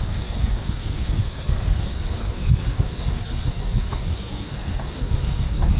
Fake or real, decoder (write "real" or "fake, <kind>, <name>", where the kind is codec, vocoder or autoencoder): fake, codec, SNAC